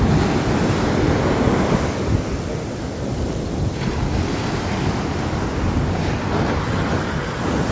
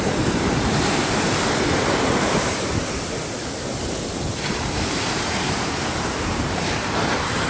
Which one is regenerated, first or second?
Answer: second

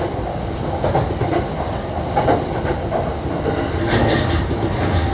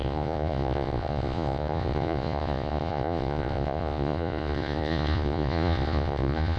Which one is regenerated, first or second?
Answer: second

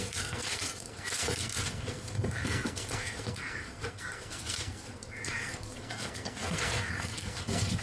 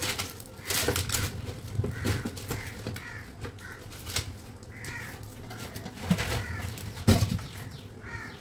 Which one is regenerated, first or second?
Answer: first